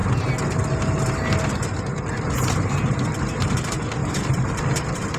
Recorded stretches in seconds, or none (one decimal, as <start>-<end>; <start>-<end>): 0.0-5.2